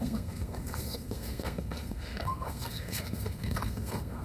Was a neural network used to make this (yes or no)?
yes